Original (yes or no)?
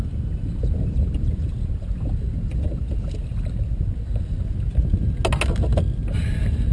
yes